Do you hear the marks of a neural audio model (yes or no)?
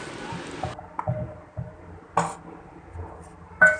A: no